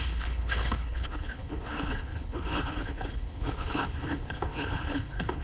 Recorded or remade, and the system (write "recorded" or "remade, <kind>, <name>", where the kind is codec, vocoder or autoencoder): remade, codec, HILCodec